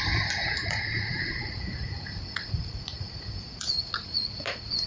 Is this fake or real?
fake